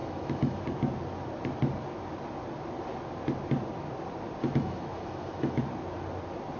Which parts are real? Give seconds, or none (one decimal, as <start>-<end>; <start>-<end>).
0.6-4.4; 5.6-6.6

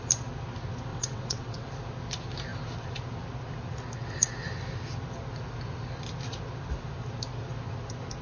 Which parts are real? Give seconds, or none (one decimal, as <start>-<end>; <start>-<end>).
0.0-0.9; 1.7-8.2

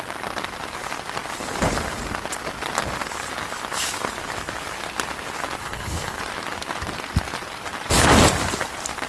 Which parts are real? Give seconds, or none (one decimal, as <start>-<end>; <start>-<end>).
0.0-5.6; 6.2-9.1

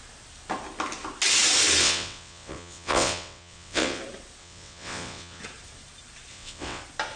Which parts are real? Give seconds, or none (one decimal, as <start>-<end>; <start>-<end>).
0.0-1.8; 4.0-4.4; 5.4-6.3; 6.8-7.2